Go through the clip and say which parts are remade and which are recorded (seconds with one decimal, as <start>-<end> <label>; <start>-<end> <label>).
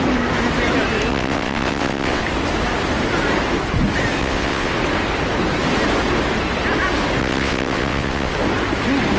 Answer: 0.0-1.1 recorded; 1.1-2.2 remade; 2.2-4.2 recorded; 4.2-4.7 remade; 4.7-7.2 recorded; 7.2-8.3 remade; 8.3-9.2 recorded